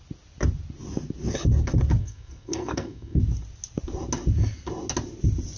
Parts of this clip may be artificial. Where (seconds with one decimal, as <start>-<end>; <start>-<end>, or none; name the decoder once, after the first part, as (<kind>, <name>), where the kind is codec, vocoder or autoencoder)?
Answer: 2.0-3.2 (codec, SNAC)